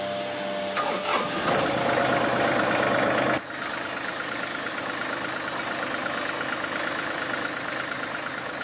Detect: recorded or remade recorded